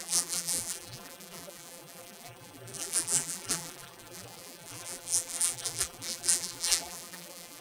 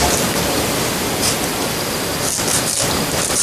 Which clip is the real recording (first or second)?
second